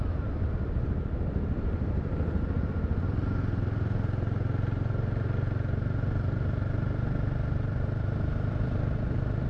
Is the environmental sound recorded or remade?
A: recorded